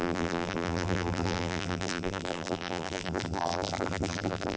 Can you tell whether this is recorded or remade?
remade